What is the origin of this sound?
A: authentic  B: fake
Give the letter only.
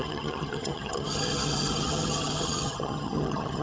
B